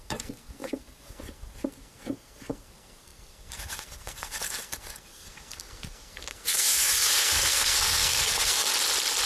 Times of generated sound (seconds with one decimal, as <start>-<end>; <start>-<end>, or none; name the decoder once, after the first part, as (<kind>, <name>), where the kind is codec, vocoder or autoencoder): 0.0-8.7 (codec, SNAC)